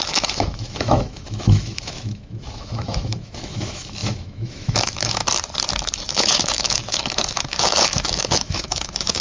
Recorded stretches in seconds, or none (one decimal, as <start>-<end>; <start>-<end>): 5.2-6.1